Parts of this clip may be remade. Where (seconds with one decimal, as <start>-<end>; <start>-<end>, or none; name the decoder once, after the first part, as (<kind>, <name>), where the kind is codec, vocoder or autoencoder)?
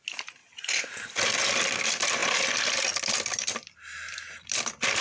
none